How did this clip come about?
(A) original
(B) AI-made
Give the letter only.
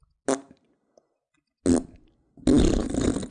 A